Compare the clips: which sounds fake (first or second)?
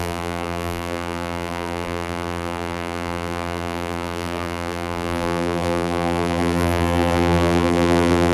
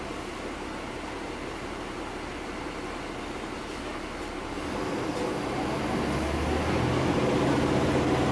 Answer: first